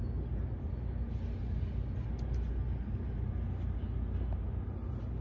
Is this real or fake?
real